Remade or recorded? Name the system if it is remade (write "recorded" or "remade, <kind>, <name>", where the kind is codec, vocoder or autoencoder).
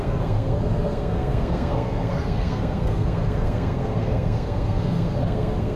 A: remade, codec, SNAC